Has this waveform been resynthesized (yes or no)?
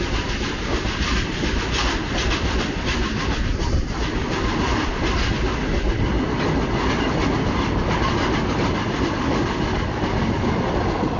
no